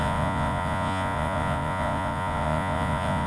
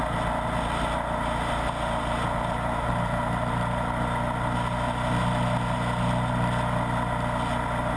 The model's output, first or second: first